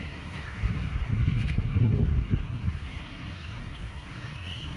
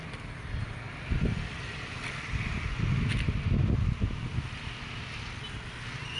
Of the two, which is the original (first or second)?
second